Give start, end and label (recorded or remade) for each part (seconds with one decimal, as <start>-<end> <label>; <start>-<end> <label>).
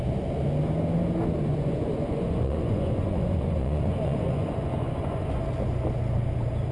0.0-1.5 recorded; 1.5-5.4 remade; 5.4-6.7 recorded